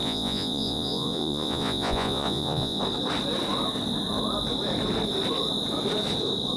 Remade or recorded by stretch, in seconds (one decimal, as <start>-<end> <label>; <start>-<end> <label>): 0.0-2.8 remade; 2.8-6.6 recorded